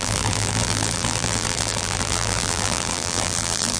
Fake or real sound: fake